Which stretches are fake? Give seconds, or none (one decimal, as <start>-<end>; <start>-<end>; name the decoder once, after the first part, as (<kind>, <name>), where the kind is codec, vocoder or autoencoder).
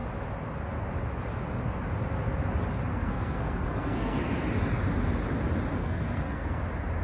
2.9-4.2 (codec, SNAC); 5.8-6.6